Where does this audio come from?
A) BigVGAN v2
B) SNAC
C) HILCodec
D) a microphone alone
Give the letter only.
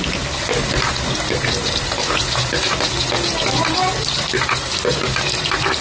D